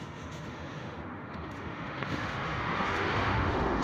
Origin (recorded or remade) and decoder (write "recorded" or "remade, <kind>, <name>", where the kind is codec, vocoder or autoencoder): remade, autoencoder, DAC-VAE